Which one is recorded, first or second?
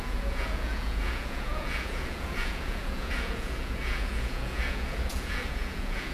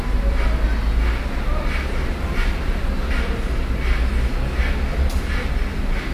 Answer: second